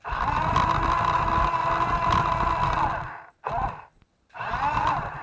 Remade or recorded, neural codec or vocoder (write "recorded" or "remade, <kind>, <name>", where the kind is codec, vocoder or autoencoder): recorded